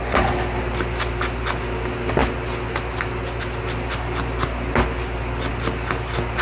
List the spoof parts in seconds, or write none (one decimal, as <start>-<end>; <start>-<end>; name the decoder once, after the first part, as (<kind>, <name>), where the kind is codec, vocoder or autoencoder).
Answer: none